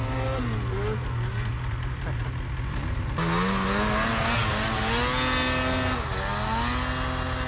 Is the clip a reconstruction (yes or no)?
no